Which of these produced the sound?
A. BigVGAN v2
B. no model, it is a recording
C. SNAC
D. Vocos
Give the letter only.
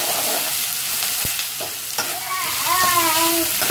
B